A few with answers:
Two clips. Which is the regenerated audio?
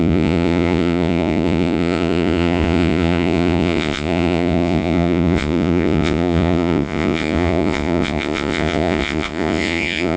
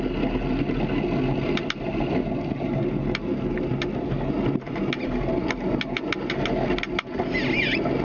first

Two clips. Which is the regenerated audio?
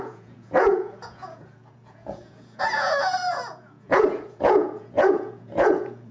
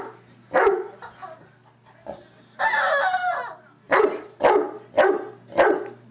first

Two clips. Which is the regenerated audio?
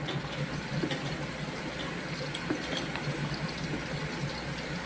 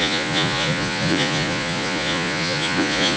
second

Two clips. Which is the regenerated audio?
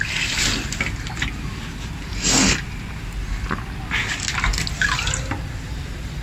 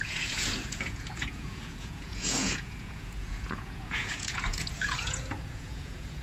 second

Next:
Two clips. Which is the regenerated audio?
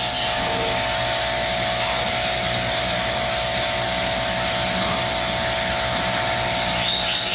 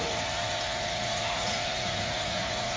second